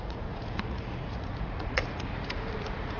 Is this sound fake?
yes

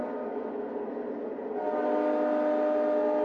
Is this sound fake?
no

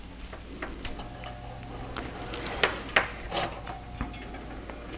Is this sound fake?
no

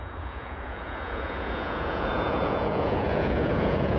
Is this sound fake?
yes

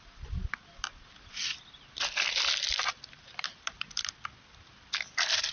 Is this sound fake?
no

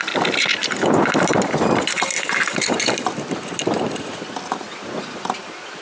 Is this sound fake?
no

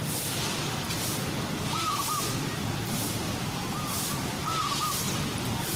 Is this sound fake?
no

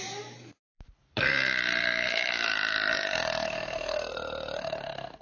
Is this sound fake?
yes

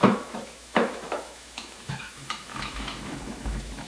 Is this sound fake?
yes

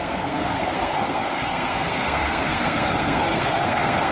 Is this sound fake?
yes